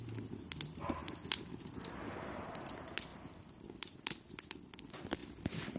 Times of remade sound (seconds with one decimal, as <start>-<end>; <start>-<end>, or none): none

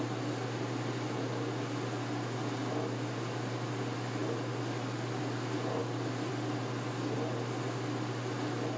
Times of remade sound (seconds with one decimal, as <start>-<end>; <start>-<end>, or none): none